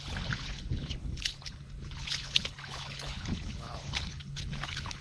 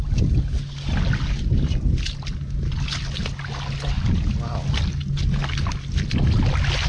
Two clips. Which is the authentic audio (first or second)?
second